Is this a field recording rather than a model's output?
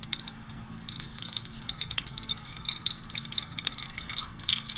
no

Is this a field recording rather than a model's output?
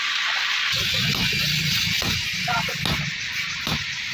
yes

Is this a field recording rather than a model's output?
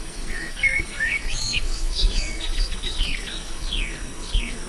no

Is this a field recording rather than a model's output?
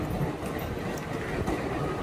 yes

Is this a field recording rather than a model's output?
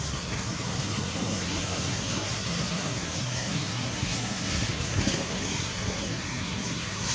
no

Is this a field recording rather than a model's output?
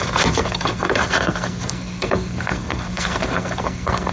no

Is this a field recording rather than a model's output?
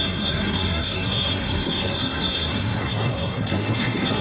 no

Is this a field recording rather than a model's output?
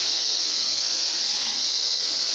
no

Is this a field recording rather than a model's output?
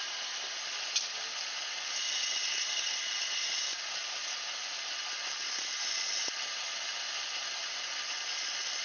yes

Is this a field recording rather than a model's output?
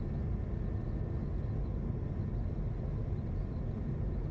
yes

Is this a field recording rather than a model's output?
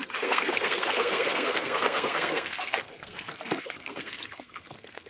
no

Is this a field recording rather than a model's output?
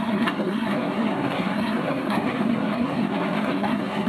no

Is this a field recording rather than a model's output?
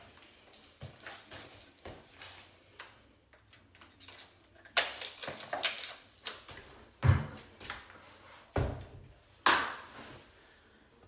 yes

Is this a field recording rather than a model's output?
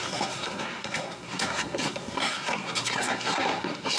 no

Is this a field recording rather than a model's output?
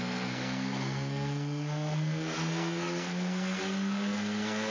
no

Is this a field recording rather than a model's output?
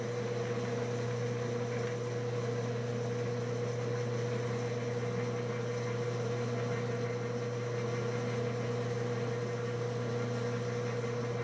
yes